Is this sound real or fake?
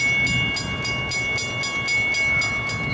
real